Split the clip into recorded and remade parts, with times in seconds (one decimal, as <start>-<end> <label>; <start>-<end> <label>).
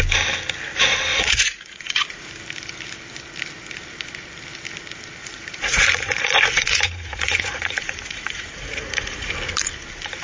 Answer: 0.0-1.1 recorded; 1.1-2.3 remade; 2.3-5.2 recorded; 5.2-9.3 remade; 9.3-10.2 recorded